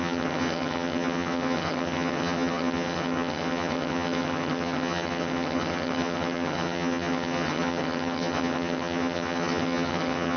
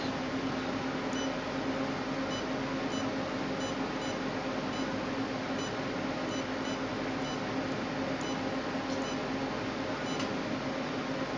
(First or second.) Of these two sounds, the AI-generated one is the first